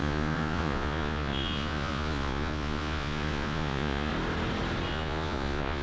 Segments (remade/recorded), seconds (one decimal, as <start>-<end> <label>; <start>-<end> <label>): 0.0-4.1 remade; 4.1-4.9 recorded; 4.9-5.8 remade